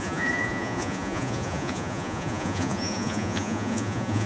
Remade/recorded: remade